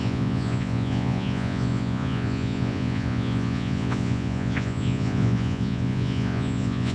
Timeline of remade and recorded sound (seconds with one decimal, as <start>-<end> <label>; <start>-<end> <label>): 0.0-6.9 remade